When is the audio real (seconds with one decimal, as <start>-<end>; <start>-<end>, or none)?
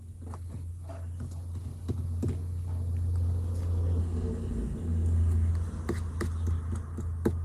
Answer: 0.0-4.0; 5.5-7.4